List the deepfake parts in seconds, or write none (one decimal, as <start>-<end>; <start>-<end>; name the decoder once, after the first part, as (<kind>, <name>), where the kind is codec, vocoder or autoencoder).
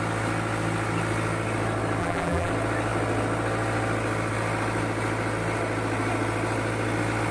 2.0-2.5 (vocoder, BigVGAN v2)